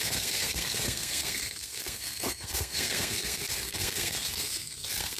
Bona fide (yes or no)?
no